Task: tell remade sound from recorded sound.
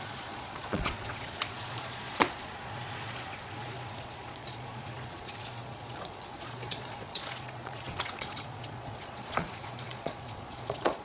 remade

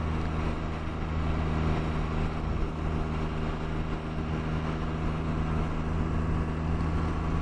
recorded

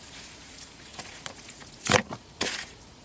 remade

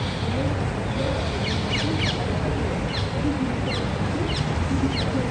recorded